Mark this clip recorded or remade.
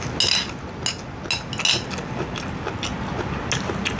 recorded